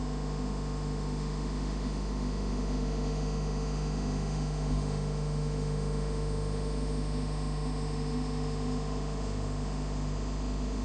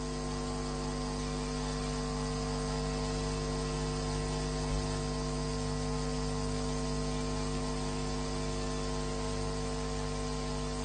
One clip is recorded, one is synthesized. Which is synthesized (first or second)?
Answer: first